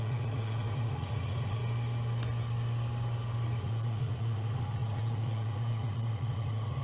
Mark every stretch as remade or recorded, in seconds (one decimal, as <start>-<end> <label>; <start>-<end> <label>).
0.0-1.6 remade; 1.6-3.6 recorded; 3.6-6.8 remade